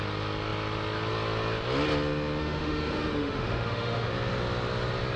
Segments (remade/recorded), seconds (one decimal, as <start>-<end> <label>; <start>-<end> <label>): 0.0-2.4 recorded; 2.4-4.1 remade; 4.1-5.2 recorded